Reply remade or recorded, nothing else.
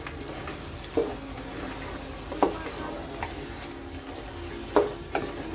recorded